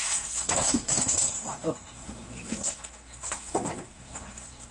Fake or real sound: fake